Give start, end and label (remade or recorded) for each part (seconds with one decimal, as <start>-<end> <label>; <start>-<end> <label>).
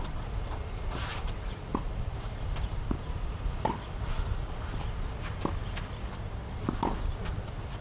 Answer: 0.0-7.8 remade